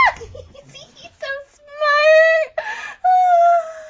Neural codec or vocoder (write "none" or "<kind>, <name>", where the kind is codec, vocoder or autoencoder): none